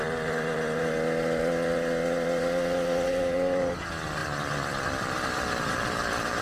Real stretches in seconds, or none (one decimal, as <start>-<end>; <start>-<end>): 0.0-4.2